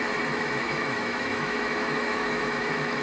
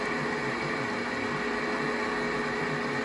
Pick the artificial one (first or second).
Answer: first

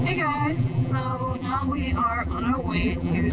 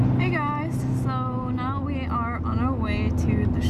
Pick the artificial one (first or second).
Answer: first